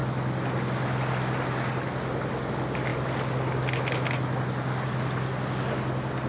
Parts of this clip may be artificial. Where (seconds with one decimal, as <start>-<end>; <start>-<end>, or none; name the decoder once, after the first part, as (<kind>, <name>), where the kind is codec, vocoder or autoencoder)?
none